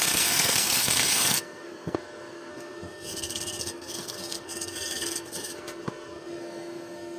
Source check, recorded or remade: remade